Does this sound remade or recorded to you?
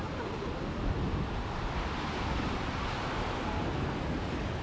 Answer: recorded